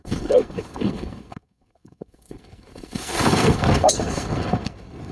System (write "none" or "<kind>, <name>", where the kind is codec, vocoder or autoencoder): codec, SNAC